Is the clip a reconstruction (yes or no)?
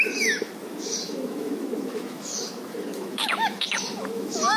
yes